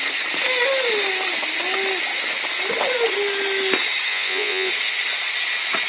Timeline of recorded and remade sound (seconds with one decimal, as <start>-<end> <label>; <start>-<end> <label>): 0.0-4.1 recorded; 4.1-4.7 remade; 4.7-5.9 recorded